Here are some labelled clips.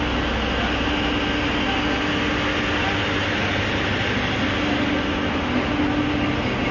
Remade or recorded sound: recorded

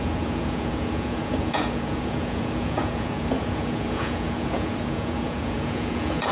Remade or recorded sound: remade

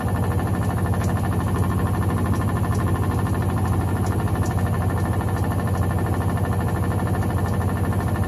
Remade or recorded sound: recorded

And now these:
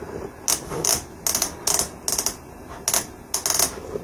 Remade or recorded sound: recorded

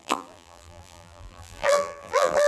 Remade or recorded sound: remade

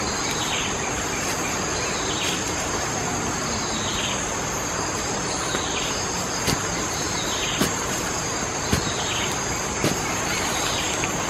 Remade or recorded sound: recorded